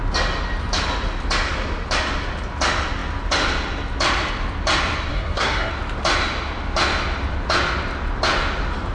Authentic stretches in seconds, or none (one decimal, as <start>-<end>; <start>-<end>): 0.0-5.1; 5.7-8.9